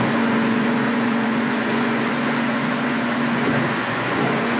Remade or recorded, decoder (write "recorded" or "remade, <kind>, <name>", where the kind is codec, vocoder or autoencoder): remade, vocoder, Vocos